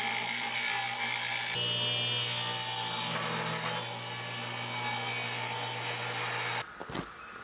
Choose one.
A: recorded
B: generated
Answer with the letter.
A